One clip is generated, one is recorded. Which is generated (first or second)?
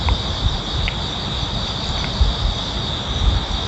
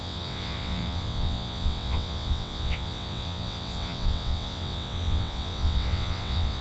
second